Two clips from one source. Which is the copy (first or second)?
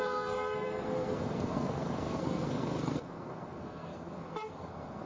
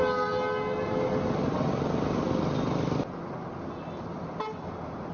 first